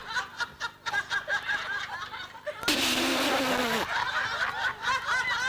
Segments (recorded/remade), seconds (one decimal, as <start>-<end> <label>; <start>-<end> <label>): 0.0-1.9 remade; 1.9-4.2 recorded; 4.2-5.0 remade; 5.0-5.5 recorded